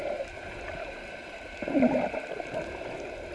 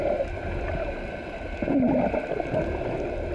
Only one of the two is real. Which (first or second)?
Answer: second